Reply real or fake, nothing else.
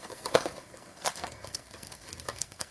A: fake